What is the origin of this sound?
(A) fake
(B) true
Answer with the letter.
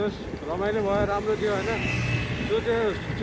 B